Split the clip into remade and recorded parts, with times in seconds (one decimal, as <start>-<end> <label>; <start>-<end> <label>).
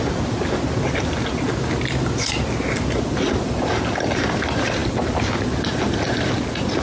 0.0-6.8 recorded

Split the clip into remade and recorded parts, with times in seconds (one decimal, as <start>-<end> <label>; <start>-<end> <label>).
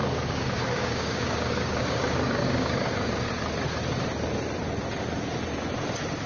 0.0-3.3 remade; 3.3-6.3 recorded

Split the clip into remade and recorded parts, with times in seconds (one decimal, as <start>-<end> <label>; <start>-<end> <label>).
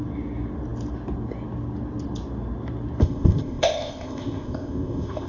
0.0-3.0 recorded; 3.0-5.3 remade